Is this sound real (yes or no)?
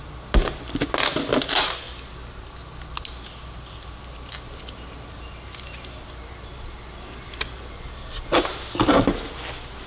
yes